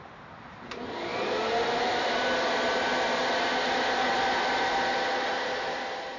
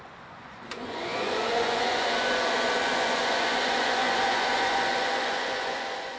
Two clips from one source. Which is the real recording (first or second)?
first